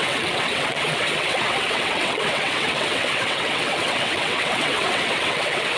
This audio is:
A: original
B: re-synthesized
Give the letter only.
B